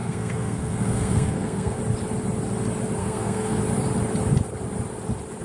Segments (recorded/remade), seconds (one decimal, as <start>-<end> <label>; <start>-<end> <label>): 0.0-1.8 remade; 1.8-3.0 recorded; 3.0-3.6 remade; 3.6-5.4 recorded

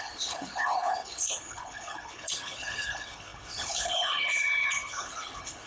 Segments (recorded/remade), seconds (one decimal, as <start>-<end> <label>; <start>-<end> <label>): 0.0-5.7 remade

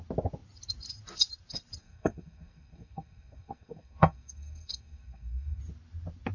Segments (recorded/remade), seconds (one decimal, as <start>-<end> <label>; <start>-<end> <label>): 0.0-1.8 recorded; 1.8-5.6 remade; 5.6-6.3 recorded

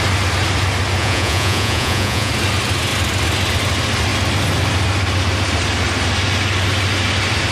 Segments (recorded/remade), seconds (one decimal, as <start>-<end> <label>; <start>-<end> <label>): 0.0-1.0 recorded; 1.0-2.3 remade; 2.3-7.5 recorded